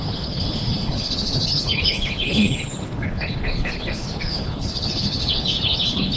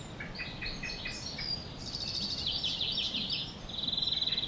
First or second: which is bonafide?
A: second